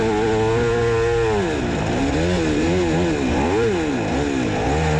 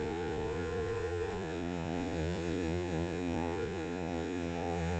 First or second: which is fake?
second